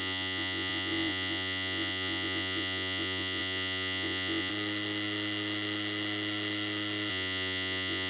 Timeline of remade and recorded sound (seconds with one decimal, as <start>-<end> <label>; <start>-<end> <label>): 0.0-4.5 remade; 4.5-7.1 recorded; 7.1-8.1 remade